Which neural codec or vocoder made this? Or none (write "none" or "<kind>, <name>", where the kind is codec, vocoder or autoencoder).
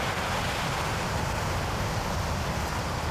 none